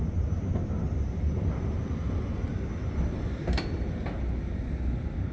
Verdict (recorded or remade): recorded